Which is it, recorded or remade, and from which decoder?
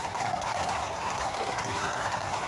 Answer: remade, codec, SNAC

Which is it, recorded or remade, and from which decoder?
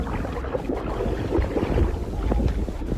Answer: recorded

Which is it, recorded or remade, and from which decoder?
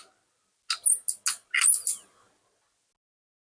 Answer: recorded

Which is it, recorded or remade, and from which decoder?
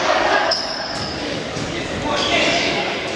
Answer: remade, codec, DAC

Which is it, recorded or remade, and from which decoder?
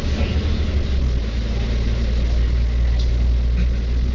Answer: recorded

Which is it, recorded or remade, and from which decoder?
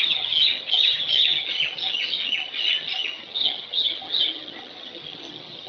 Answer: remade, vocoder, HiFi-GAN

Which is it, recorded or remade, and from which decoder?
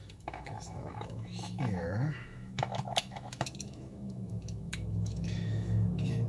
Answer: remade, autoencoder, DAC-VAE